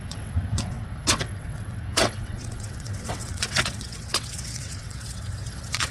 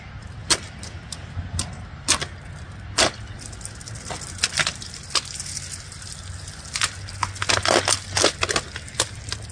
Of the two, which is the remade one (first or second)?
first